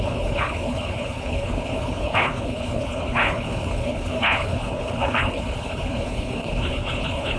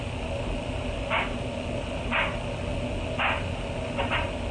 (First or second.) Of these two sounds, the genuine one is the second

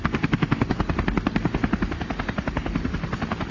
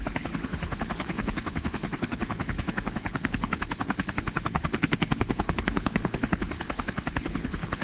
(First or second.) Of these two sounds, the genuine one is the first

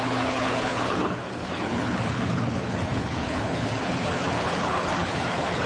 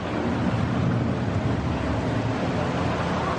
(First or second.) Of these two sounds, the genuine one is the second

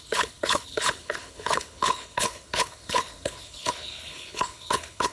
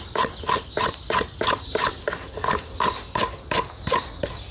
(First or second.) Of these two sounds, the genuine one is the second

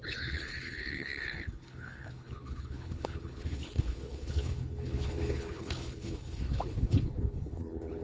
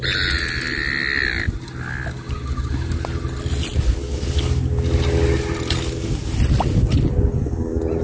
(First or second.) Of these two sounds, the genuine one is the second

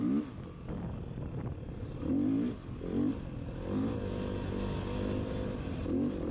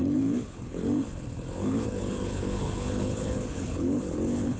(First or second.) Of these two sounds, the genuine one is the first